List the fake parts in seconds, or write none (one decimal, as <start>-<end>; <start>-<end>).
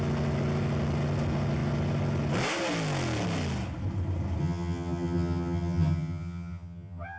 4.4-7.2